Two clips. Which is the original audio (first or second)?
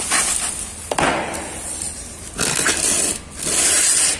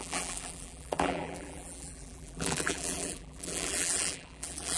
first